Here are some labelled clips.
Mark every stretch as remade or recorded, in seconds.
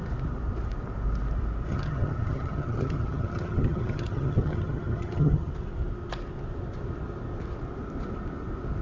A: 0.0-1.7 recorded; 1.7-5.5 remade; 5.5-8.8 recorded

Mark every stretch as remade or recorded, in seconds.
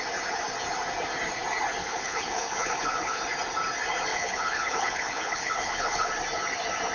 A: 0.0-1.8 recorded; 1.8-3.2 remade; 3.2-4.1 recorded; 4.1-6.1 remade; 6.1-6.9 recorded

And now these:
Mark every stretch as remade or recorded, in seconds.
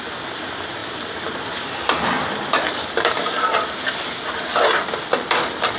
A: 0.0-5.8 recorded